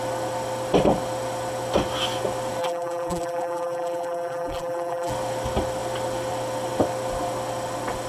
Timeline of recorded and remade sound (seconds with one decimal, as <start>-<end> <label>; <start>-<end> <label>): 0.0-2.6 recorded; 2.6-5.1 remade; 5.1-8.1 recorded